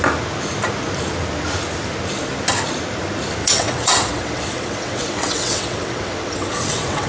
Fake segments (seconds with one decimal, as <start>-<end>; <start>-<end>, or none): 3.4-7.1